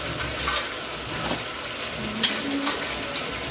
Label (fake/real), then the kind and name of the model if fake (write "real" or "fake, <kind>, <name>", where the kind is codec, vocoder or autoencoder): real